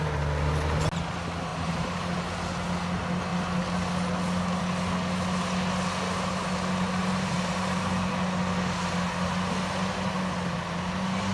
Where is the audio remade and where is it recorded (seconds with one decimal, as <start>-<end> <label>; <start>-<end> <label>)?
0.0-1.5 recorded; 1.5-2.2 remade; 2.2-7.0 recorded; 7.0-8.1 remade; 8.1-11.3 recorded